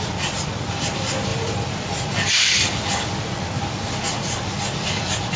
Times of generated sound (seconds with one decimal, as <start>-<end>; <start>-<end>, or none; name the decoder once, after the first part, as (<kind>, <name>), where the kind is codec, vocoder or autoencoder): 1.3-4.1 (vocoder, BigVGAN v2)